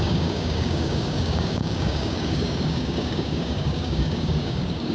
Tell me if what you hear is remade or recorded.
remade